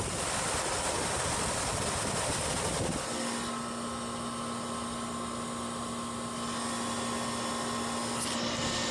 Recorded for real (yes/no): yes